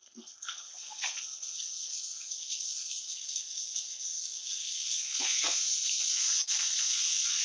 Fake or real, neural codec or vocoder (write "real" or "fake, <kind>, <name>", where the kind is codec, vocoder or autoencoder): fake, codec, SNAC